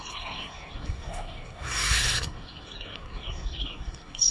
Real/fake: fake